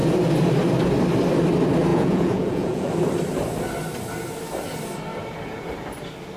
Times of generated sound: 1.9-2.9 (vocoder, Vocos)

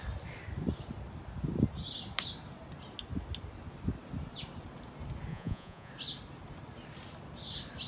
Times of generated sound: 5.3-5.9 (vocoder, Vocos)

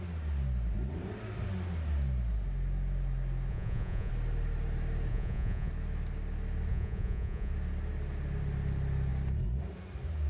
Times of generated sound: 3.5-4.1 (vocoder, Vocos); 5.1-5.7; 6.7-7.5

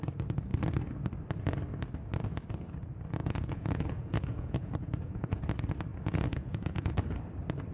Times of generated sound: 3.2-5.4 (vocoder, Vocos); 5.9-6.9

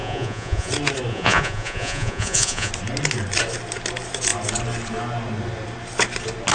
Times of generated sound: 0.0-0.7 (vocoder, Vocos); 1.1-2.7

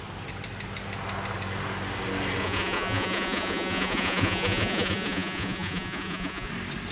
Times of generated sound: 2.4-6.5 (vocoder, Vocos)

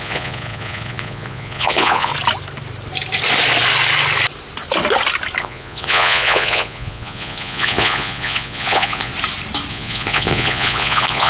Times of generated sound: 0.0-2.1 (vocoder, Vocos); 5.4-9.1; 9.7-11.3

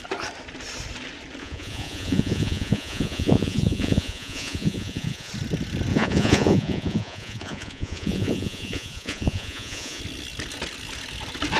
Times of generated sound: 1.4-5.3 (vocoder, Vocos); 5.9-10.0